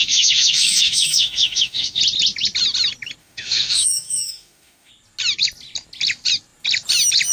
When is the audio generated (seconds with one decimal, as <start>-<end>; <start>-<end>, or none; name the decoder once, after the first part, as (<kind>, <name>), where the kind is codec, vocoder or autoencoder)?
0.0-2.0 (autoencoder, DAC-VAE); 3.2-4.9